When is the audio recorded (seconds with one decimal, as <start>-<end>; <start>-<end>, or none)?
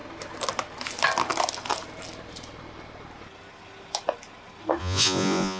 0.0-4.8